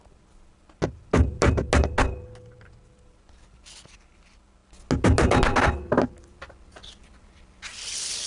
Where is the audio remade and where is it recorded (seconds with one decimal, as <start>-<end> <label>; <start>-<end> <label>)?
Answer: 0.0-8.3 recorded